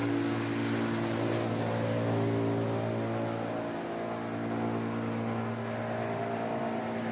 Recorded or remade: recorded